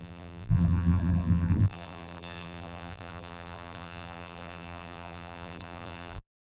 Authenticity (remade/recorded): remade